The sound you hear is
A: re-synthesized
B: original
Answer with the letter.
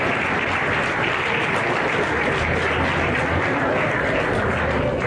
B